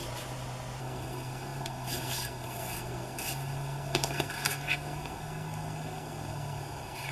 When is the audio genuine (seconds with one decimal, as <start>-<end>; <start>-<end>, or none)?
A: 0.0-0.8